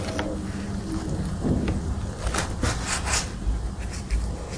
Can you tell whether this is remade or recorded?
recorded